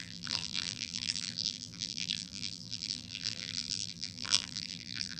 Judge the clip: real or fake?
fake